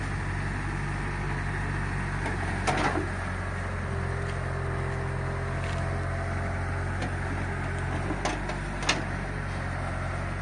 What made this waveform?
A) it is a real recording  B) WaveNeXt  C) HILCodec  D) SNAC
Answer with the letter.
A